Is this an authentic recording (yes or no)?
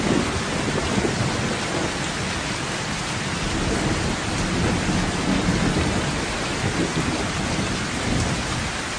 yes